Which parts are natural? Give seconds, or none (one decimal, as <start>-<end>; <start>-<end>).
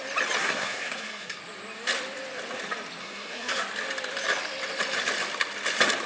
0.0-0.4; 1.4-3.0; 3.6-6.1